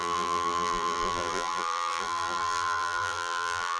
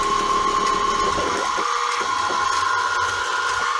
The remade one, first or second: first